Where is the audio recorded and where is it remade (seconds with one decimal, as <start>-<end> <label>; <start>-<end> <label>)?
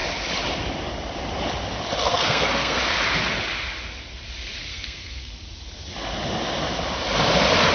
0.0-2.1 recorded; 2.1-2.8 remade; 2.8-4.7 recorded; 4.7-5.3 remade; 5.3-7.7 recorded